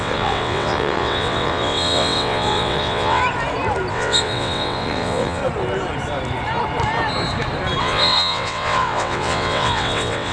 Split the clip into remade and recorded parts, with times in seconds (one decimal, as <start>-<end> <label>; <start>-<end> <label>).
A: 0.0-3.2 remade; 3.2-3.9 recorded; 3.9-5.4 remade; 5.4-7.8 recorded; 7.8-10.3 remade

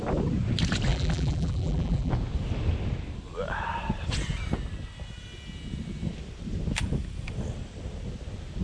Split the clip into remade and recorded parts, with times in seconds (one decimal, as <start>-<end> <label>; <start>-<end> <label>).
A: 0.0-0.9 recorded; 0.9-2.1 remade; 2.1-8.6 recorded

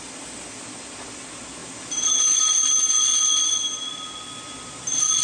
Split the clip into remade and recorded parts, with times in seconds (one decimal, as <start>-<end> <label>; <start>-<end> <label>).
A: 0.0-5.2 recorded

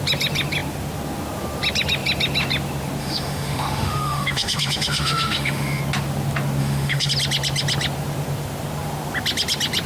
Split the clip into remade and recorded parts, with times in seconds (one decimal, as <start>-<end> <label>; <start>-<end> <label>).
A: 0.0-3.0 recorded; 3.0-5.8 remade; 5.8-6.6 recorded; 6.6-7.1 remade; 7.1-9.9 recorded

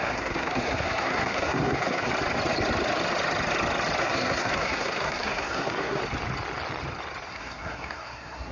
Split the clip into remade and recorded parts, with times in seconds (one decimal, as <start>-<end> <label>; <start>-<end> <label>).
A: 0.0-2.1 remade; 2.1-4.0 recorded; 4.0-6.0 remade; 6.0-7.3 recorded; 7.3-8.5 remade